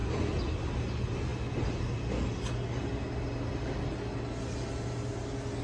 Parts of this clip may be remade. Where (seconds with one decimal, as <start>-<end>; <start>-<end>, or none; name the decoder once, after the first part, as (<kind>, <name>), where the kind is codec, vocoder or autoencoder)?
none